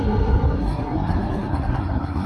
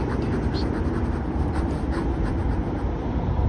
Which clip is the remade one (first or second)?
first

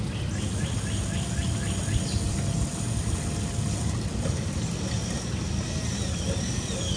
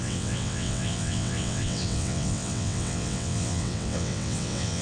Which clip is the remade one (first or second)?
second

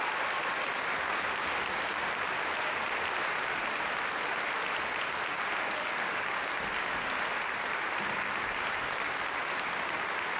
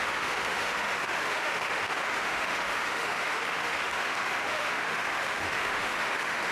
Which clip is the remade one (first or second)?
second